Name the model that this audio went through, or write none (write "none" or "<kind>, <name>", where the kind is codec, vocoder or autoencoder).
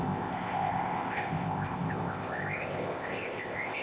codec, ZipCodec